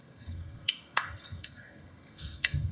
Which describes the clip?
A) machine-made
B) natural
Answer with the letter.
A